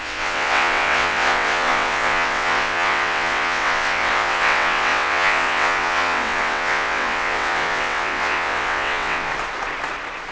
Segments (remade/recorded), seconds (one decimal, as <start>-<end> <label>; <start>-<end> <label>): 0.0-9.3 remade; 9.3-10.3 recorded